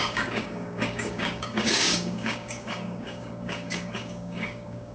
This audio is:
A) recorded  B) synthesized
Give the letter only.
B